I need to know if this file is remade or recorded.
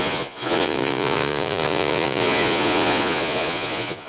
remade